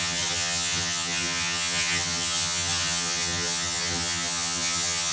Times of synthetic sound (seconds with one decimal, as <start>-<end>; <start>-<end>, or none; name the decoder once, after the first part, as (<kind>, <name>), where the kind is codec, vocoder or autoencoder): 0.0-5.1 (vocoder, HiFi-GAN)